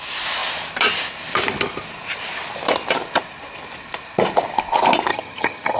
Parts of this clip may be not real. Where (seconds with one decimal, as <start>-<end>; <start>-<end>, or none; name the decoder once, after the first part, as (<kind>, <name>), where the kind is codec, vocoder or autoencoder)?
5.1-5.8 (vocoder, HiFi-GAN)